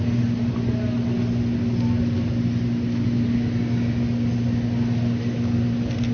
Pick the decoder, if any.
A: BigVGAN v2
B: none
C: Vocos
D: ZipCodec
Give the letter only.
B